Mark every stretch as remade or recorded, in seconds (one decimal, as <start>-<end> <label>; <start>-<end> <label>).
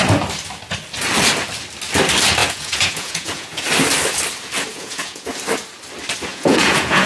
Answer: 0.0-2.4 recorded; 2.4-3.6 remade; 3.6-4.7 recorded; 4.7-5.3 remade; 5.3-6.3 recorded; 6.3-7.1 remade